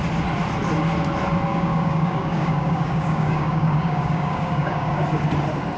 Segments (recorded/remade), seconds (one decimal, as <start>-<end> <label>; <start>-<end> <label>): 0.0-1.5 recorded; 1.5-5.0 remade; 5.0-5.8 recorded